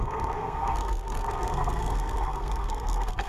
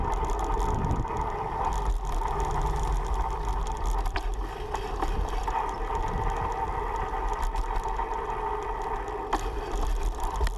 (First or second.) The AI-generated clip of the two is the first